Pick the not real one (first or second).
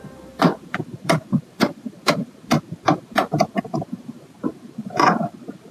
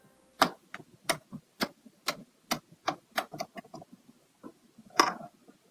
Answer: first